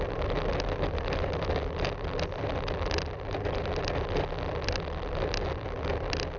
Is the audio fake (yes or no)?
no